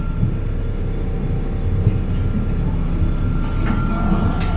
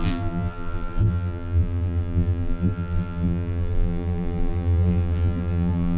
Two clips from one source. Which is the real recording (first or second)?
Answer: first